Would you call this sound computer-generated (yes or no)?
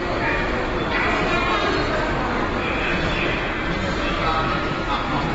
no